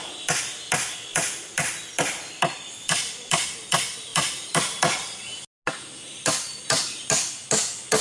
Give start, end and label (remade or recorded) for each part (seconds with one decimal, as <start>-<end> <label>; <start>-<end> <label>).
0.0-8.0 recorded